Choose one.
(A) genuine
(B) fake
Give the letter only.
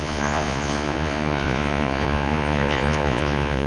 B